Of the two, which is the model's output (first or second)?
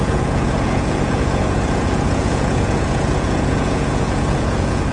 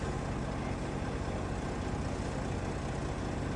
first